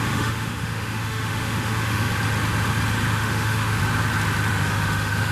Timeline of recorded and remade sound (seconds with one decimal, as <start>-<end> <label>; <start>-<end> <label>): 0.0-2.1 remade; 2.1-3.1 recorded; 3.1-3.8 remade; 3.8-4.5 recorded; 4.5-5.3 remade